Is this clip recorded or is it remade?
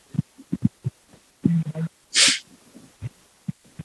recorded